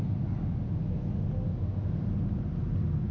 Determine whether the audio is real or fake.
real